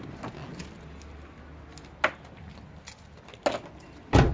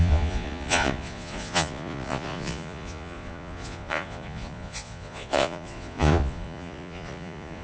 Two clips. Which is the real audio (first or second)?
first